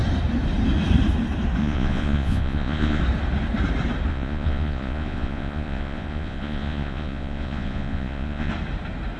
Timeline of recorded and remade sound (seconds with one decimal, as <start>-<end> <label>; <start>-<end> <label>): 0.0-1.6 recorded; 1.6-3.0 remade; 3.0-4.1 recorded; 4.1-8.5 remade; 8.5-9.2 recorded